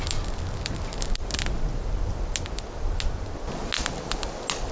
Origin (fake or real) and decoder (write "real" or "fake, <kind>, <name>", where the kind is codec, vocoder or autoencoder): real